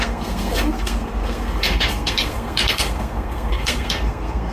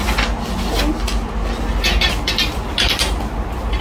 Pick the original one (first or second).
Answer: second